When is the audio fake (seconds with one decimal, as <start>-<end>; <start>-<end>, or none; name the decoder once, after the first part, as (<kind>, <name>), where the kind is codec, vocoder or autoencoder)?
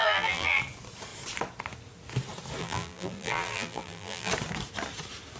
0.0-0.6 (vocoder, BigVGAN v2); 2.6-4.3